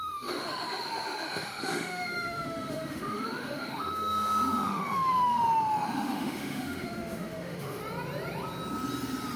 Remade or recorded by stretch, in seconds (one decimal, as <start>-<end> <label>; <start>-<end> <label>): 0.0-7.8 remade; 7.8-9.4 recorded